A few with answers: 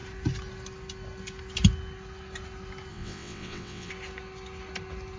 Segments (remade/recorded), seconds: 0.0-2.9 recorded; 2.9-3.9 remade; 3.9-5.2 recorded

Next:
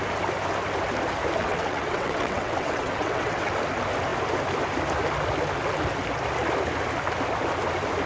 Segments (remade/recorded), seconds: 0.0-1.4 recorded; 1.4-3.5 remade; 3.5-8.1 recorded